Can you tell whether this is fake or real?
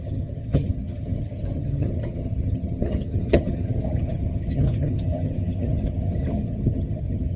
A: fake